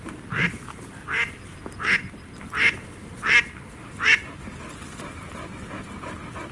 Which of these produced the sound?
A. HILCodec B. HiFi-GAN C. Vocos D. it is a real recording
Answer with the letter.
D